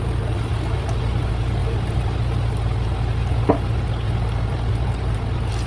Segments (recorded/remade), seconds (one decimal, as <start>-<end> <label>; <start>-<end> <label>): 0.0-5.7 recorded